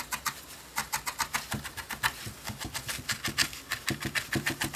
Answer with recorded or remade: recorded